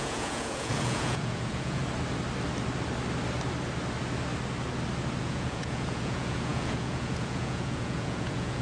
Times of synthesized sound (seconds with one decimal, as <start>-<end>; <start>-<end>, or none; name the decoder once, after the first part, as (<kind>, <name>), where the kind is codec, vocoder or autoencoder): 0.0-1.8 (vocoder, Vocos); 5.2-8.6